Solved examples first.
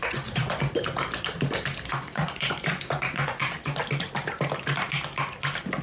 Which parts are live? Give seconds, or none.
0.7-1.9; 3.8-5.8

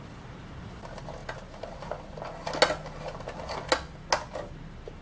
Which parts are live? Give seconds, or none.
0.0-5.0

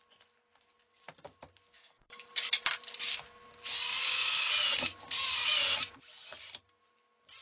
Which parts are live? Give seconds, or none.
0.0-1.7; 2.4-4.0; 4.5-7.4